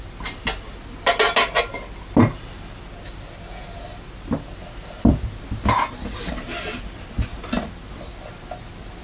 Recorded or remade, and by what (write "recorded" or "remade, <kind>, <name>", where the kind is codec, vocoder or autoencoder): recorded